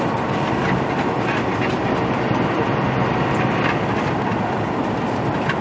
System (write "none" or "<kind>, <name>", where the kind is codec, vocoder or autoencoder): none